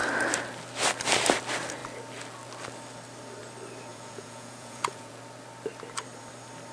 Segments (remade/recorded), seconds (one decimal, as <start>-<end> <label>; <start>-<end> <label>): 0.0-3.9 recorded; 3.9-5.2 remade; 5.2-6.7 recorded